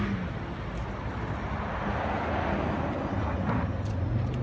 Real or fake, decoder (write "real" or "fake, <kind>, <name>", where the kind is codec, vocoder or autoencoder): real